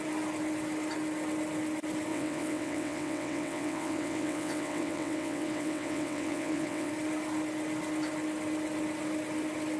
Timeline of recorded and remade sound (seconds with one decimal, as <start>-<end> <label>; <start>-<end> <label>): 0.0-2.1 recorded; 2.1-6.9 remade; 6.9-9.8 recorded